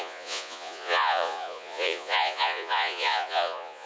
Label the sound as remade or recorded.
remade